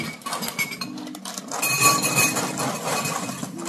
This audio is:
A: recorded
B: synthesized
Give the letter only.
A